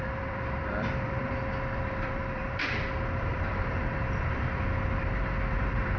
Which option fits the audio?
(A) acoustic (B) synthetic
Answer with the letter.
B